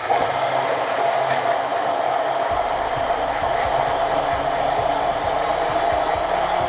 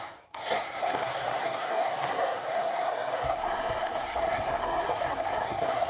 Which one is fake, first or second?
second